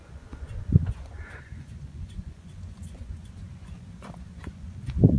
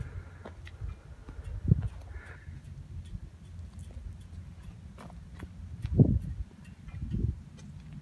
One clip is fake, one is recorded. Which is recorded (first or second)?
second